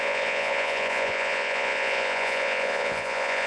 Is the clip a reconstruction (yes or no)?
yes